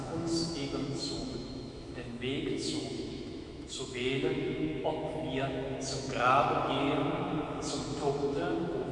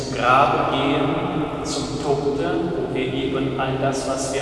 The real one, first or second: second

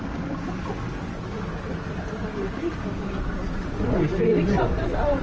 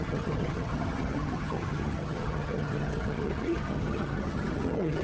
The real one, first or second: first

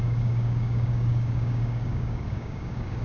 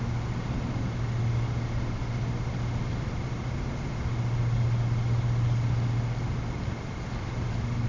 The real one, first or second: second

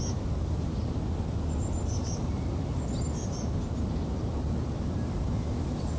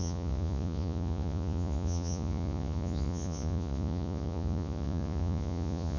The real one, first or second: first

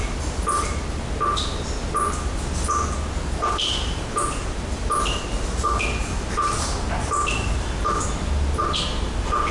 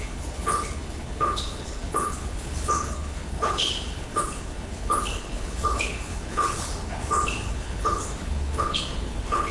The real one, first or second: first